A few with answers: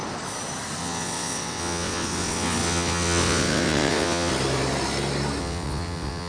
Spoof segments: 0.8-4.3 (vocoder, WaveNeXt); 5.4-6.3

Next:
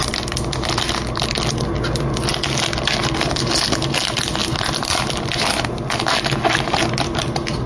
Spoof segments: 4.4-5.0 (vocoder, BigVGAN v2)

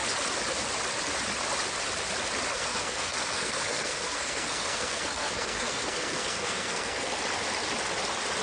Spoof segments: 2.5-7.1 (codec, SNAC)

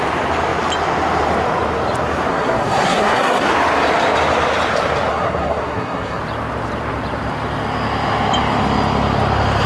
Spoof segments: 2.3-3.5 (codec, SNAC); 5.1-6.2